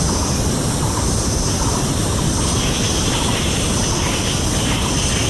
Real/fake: real